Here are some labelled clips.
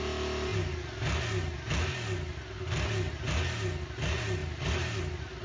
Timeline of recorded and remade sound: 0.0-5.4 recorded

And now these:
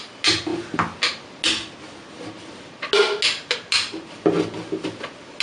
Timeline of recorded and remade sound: 0.0-5.4 recorded

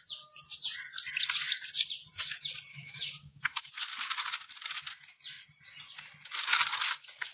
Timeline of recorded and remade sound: 0.0-2.7 recorded; 2.7-3.7 remade; 3.7-7.3 recorded

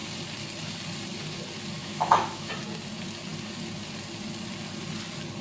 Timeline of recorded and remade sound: 0.0-1.8 recorded; 1.8-2.5 remade; 2.5-5.4 recorded

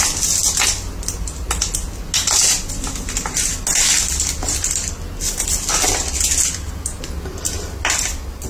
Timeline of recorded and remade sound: 0.0-8.5 recorded

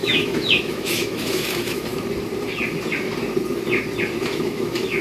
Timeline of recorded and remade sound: 0.0-1.9 remade; 1.9-4.2 recorded; 4.2-5.0 remade

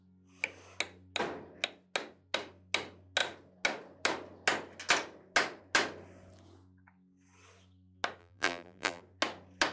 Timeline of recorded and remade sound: 0.0-8.2 recorded; 8.2-9.0 remade; 9.0-9.7 recorded